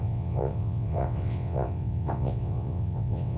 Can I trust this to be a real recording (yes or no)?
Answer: no